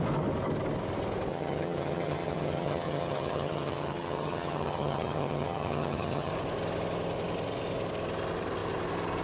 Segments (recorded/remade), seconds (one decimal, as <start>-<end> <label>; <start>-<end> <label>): 0.0-1.3 recorded; 1.3-6.3 remade; 6.3-9.2 recorded